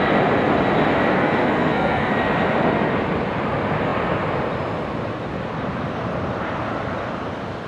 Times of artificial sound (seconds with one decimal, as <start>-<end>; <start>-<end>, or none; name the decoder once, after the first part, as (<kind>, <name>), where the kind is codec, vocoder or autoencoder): 1.1-2.1 (codec, SNAC)